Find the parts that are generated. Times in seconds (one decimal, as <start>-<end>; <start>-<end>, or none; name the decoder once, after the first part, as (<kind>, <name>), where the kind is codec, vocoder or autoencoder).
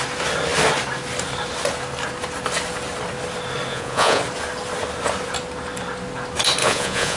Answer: 3.7-4.2 (vocoder, Vocos); 6.6-7.2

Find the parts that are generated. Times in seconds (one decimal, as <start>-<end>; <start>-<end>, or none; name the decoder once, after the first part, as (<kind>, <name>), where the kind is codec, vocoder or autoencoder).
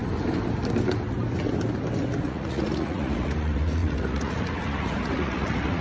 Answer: 2.2-5.8 (vocoder, Vocos)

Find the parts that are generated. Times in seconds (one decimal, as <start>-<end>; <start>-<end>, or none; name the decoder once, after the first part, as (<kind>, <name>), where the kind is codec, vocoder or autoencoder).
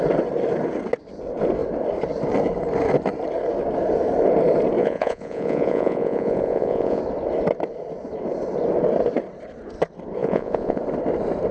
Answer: 4.8-7.0 (vocoder, Vocos); 10.2-10.8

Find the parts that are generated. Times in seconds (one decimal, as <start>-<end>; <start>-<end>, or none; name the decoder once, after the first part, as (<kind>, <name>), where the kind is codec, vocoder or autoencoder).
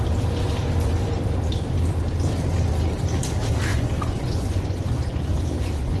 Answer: 3.7-6.0 (vocoder, Vocos)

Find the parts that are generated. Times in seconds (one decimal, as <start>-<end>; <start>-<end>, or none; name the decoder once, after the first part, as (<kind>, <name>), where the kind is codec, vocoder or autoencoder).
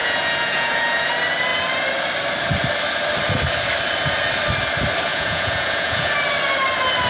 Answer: 0.0-1.1 (vocoder, Vocos); 5.1-6.1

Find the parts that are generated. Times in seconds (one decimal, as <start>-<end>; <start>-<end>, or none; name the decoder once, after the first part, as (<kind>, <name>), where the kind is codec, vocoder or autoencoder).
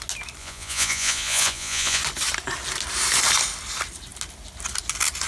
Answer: 0.4-2.0 (vocoder, Vocos)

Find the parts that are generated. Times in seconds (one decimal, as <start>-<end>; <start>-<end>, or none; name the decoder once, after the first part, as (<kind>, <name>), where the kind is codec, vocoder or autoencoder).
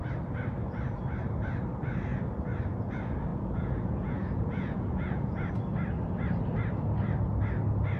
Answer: 3.3-5.5 (vocoder, Vocos)